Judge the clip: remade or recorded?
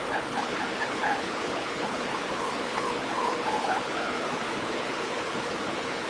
remade